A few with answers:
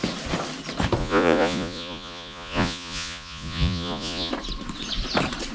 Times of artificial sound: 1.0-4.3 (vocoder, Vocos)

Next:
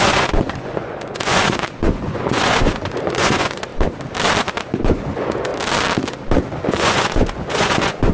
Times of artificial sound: 0.0-3.7 (vocoder, Vocos); 4.4-5.5; 6.7-8.1

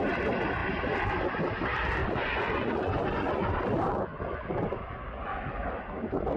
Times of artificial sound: 2.0-3.5 (vocoder, Vocos)